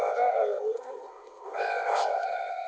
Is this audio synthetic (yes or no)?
yes